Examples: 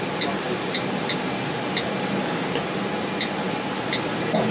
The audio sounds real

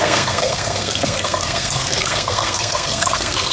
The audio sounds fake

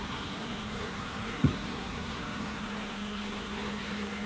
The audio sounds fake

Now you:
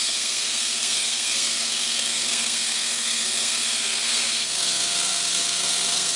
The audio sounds fake